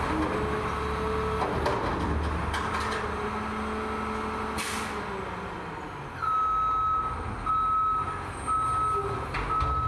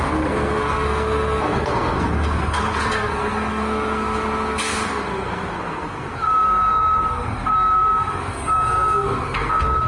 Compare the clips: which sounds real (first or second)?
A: first